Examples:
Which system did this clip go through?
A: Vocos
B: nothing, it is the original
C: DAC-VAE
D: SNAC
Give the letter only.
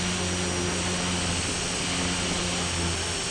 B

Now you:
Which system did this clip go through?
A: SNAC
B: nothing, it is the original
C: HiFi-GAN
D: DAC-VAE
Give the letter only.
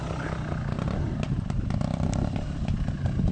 B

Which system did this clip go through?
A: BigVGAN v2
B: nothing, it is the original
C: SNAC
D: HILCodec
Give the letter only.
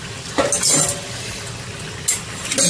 B